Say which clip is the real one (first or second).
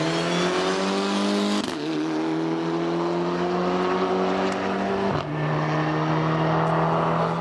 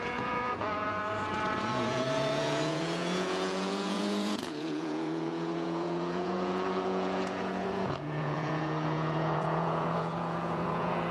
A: first